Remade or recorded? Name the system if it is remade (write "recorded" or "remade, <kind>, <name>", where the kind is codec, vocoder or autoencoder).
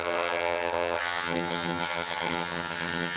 remade, vocoder, HiFi-GAN